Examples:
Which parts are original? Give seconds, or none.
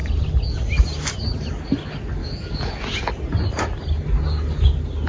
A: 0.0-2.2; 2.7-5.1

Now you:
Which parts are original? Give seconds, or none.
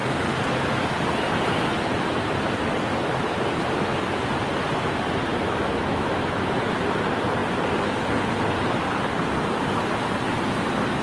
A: 0.0-5.3; 6.5-11.0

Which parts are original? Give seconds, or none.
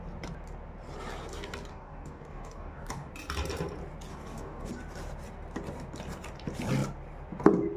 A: 0.0-1.7; 3.1-4.1; 4.7-7.8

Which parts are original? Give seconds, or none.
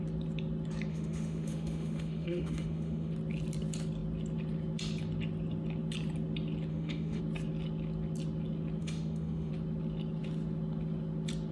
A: 0.0-0.9; 3.1-6.7; 7.2-8.8; 9.5-11.5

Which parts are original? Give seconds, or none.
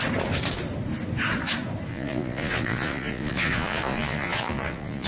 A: 0.0-1.9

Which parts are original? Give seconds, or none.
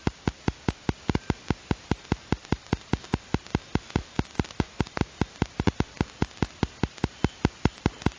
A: 0.0-8.2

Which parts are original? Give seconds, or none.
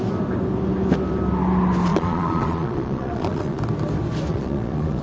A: 0.0-1.9; 3.6-4.3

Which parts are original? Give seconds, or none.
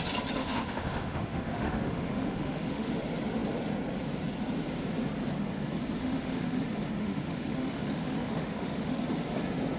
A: 0.0-0.4; 2.9-6.0; 6.6-7.0; 9.0-9.8